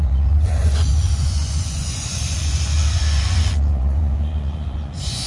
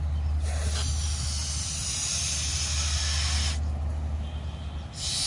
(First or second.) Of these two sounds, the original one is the second